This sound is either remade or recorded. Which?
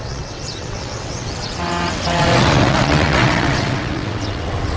remade